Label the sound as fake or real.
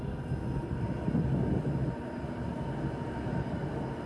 real